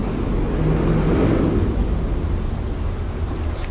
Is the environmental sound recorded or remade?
recorded